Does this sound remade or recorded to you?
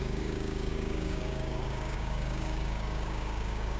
remade